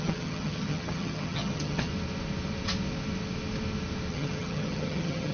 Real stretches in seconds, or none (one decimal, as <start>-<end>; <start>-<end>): 1.9-4.1